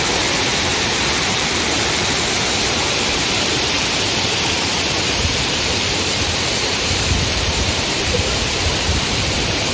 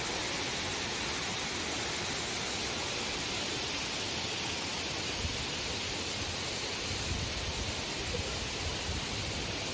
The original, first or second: second